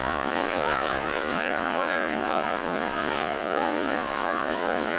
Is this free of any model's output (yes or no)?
no